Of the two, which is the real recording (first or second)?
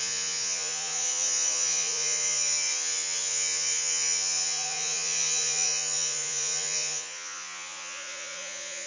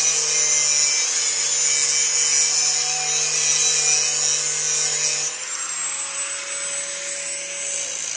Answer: second